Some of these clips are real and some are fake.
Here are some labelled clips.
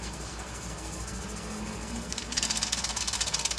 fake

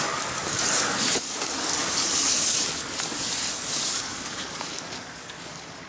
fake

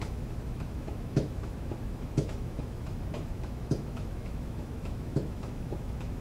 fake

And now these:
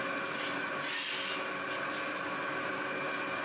real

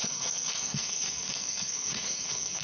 fake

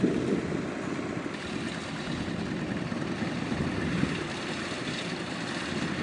fake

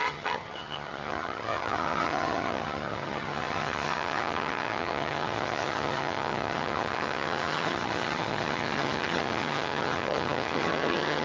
fake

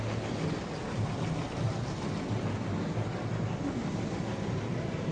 real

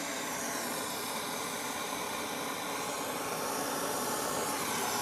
real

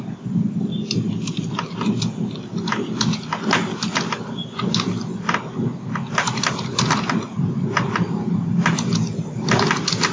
real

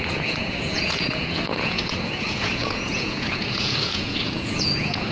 fake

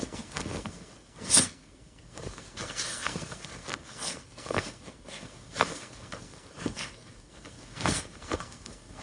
fake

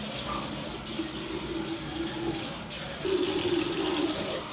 real